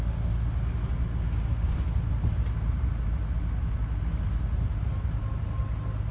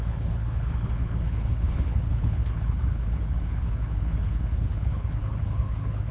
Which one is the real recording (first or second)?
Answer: first